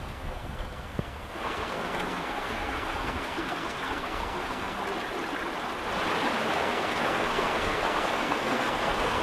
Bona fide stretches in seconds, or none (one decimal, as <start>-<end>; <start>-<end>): 4.8-6.5